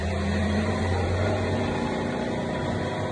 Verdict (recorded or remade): remade